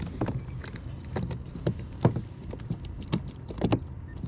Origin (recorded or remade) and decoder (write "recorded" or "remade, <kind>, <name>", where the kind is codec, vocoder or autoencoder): recorded